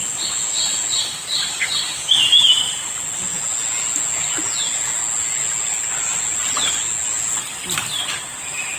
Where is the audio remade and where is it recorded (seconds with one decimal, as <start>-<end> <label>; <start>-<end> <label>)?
0.0-8.8 recorded